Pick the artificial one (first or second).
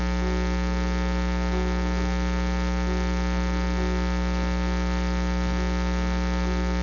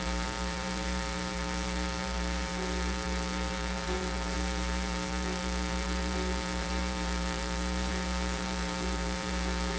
second